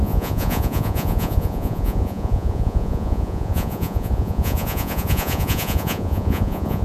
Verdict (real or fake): fake